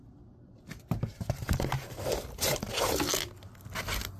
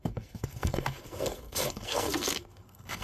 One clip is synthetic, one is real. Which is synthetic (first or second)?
second